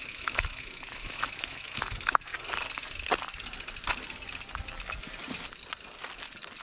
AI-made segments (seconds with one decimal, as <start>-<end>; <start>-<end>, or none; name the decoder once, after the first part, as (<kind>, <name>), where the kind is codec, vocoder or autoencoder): 0.0-2.3 (autoencoder, DAC-VAE)